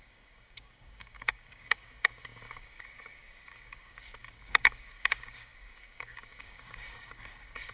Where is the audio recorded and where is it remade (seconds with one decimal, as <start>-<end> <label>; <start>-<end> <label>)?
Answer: 0.0-7.7 remade